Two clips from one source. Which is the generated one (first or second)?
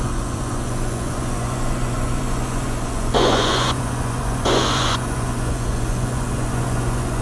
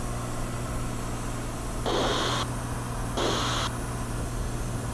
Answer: first